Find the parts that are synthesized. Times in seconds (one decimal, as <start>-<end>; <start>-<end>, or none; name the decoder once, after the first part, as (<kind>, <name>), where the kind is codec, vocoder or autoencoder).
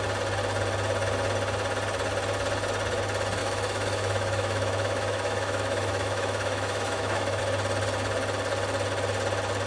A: 3.4-7.4 (autoencoder, DAC-VAE)